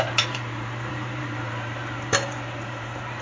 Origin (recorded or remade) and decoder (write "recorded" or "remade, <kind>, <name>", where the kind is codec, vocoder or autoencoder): remade, vocoder, BigVGAN v2